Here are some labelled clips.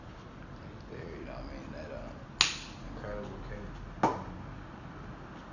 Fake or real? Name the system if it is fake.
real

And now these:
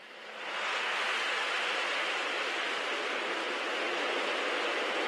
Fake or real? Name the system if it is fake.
fake, vocoder, BigVGAN v2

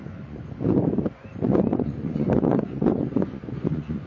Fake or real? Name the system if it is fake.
fake, vocoder, Vocos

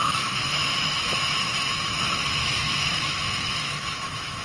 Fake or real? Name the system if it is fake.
fake, autoencoder, DAC-VAE